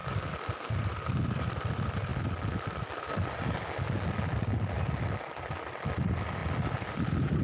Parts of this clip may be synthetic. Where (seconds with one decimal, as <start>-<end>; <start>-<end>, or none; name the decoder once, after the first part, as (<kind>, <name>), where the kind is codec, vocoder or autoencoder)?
0.0-2.1 (vocoder, BigVGAN v2); 5.6-7.4